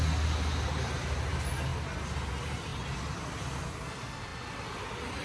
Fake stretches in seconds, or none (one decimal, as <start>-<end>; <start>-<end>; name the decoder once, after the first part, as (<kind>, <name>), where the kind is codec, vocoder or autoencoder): none